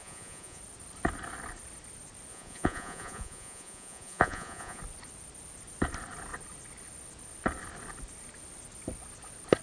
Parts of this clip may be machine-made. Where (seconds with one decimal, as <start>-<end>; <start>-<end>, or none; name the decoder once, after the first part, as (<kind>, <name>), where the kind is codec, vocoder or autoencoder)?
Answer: 0.0-0.6 (vocoder, Vocos); 2.3-4.8